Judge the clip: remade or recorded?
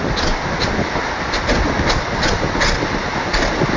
recorded